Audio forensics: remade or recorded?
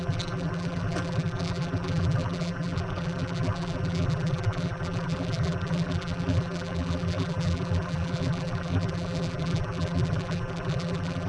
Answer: remade